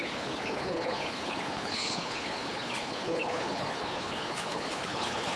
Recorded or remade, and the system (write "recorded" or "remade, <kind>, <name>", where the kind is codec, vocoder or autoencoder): remade, codec, HILCodec